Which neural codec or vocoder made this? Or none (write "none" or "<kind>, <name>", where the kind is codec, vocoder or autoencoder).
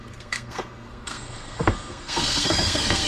codec, SNAC